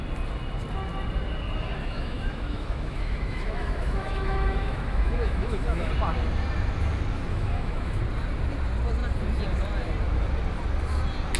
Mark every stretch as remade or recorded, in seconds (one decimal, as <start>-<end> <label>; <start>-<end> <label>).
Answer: 0.0-1.8 recorded; 1.8-5.9 remade; 5.9-7.3 recorded; 7.3-8.0 remade; 8.0-11.4 recorded